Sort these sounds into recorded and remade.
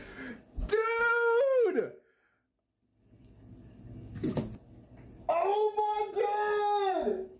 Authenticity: recorded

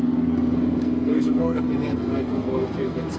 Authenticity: remade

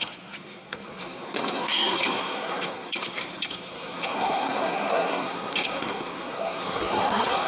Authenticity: remade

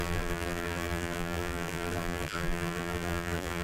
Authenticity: remade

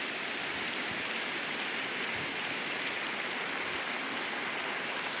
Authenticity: recorded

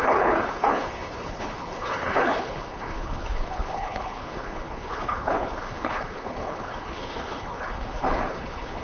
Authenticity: remade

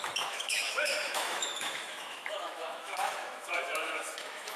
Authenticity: remade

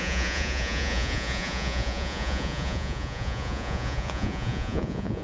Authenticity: remade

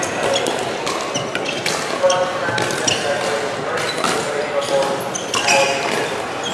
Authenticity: recorded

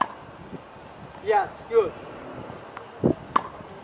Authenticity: recorded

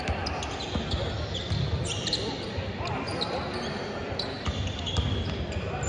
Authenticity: recorded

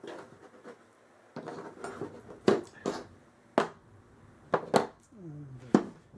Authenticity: recorded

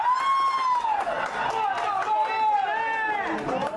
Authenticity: recorded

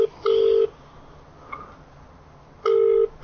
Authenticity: recorded